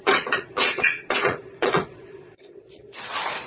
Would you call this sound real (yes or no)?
no